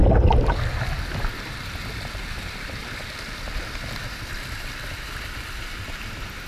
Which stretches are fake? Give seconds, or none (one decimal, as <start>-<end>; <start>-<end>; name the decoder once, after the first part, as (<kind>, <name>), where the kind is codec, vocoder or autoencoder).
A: 0.5-4.0 (vocoder, BigVGAN v2); 4.7-6.5